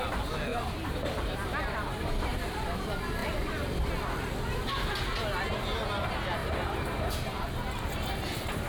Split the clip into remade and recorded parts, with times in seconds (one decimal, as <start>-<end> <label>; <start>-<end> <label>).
0.0-0.5 recorded; 0.5-2.6 remade; 2.6-3.2 recorded; 3.2-3.9 remade; 3.9-6.4 recorded; 6.4-7.5 remade; 7.5-8.7 recorded